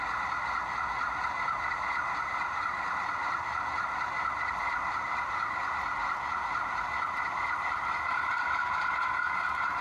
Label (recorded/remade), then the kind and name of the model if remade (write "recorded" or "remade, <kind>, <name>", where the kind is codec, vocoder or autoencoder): recorded